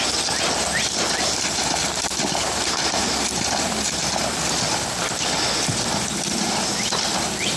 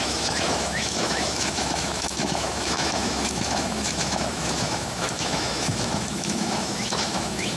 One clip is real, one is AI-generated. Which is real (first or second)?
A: first